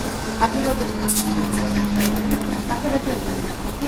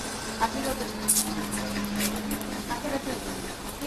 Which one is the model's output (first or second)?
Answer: first